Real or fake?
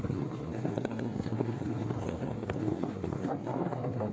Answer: fake